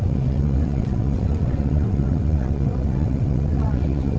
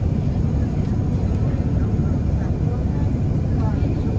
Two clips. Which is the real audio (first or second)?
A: second